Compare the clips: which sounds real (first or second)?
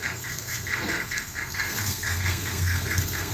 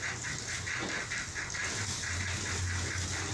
second